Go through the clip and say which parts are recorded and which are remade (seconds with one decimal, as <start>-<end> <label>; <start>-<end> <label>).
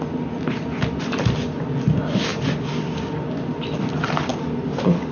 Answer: 0.0-5.1 recorded